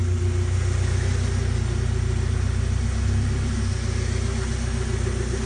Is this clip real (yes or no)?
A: yes